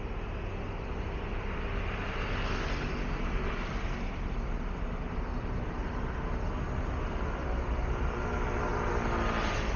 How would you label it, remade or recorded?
recorded